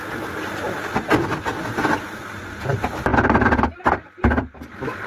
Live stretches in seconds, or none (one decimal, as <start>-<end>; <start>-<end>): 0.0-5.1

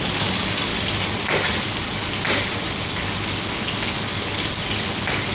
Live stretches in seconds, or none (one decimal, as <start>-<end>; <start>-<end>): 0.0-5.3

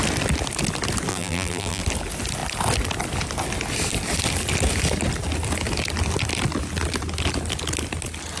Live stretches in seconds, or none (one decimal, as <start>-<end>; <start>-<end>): 0.0-1.1; 1.8-8.4

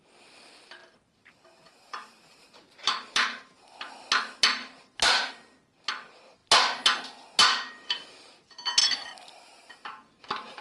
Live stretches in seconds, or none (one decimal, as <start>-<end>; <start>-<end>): 0.0-0.8; 3.9-4.6; 5.3-8.8; 9.5-10.6

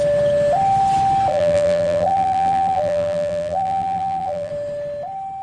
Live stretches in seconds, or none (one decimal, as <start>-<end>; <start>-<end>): 0.0-1.3; 4.5-5.4

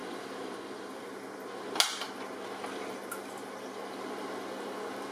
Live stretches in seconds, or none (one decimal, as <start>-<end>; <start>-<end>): 1.0-5.1

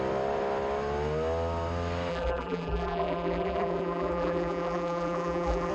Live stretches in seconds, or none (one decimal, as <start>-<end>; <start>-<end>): 0.0-2.1

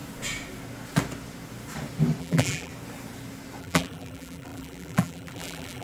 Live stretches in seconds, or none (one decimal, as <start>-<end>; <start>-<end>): 0.0-2.2; 2.7-3.6